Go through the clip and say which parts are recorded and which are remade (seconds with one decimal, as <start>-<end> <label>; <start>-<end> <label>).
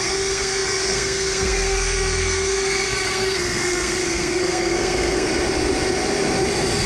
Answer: 0.0-5.3 remade; 5.3-6.9 recorded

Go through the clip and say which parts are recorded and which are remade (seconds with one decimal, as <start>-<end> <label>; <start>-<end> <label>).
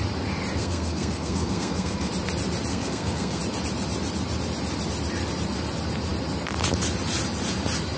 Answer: 0.0-0.6 recorded; 0.6-2.1 remade; 2.1-2.7 recorded; 2.7-3.4 remade; 3.4-8.0 recorded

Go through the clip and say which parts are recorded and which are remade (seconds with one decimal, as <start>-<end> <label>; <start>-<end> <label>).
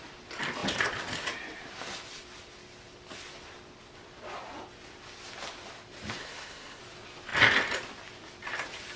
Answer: 0.0-6.2 recorded; 6.2-6.8 remade; 6.8-9.0 recorded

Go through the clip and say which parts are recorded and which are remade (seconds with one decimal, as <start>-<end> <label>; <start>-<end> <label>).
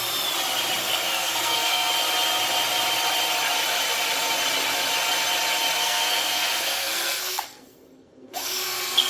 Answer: 0.0-0.8 recorded; 0.8-1.9 remade; 1.9-5.8 recorded; 5.8-9.1 remade